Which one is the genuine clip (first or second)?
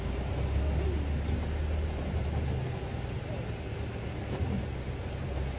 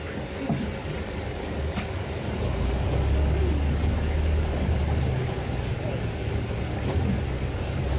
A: first